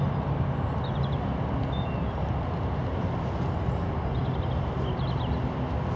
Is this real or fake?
real